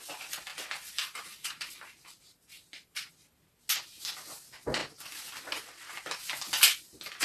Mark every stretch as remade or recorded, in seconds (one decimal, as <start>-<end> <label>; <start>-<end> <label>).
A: 0.0-0.5 recorded; 0.5-3.1 remade; 3.1-7.2 recorded